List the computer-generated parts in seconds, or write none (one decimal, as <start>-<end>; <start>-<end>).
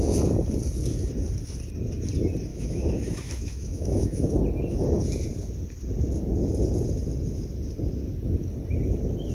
2.5-4.3